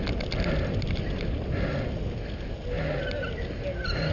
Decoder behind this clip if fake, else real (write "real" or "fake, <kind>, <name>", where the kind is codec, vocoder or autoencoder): real